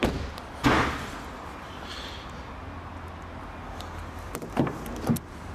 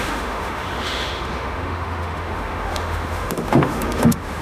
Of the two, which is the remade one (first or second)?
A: second